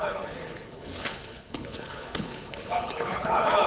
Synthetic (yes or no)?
yes